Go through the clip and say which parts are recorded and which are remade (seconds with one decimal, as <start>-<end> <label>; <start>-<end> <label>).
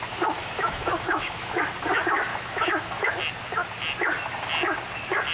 0.0-0.4 recorded; 0.4-1.6 remade; 1.6-2.3 recorded; 2.3-3.1 remade; 3.1-5.3 recorded